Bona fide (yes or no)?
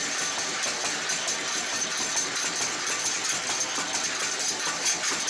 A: yes